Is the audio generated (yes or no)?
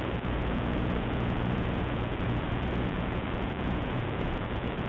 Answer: yes